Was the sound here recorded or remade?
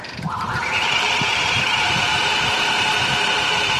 remade